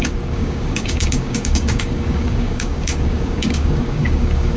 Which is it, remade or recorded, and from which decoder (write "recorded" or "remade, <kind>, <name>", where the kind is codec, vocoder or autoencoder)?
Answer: remade, codec, DAC